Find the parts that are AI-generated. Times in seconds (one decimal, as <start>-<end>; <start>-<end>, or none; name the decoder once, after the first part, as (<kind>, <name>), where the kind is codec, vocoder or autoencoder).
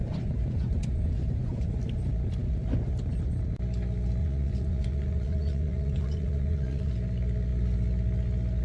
0.0-1.7 (vocoder, Vocos); 4.2-6.9